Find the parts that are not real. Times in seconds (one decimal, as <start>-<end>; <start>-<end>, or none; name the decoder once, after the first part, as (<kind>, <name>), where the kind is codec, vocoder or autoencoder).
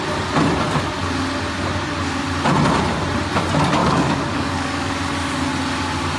3.8-4.9 (codec, DAC)